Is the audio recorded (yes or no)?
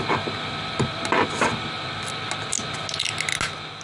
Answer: yes